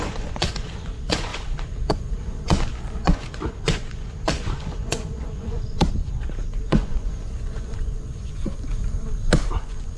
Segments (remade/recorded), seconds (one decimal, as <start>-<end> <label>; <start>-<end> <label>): 0.0-8.7 remade; 8.7-9.5 recorded; 9.5-10.0 remade